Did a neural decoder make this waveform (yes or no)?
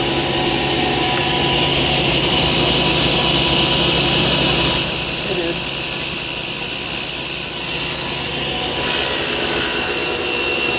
no